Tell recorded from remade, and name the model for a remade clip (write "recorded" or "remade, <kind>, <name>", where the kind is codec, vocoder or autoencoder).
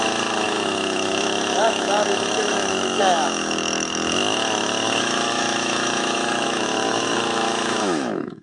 remade, autoencoder, DAC-VAE